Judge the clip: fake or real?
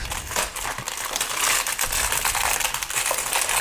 real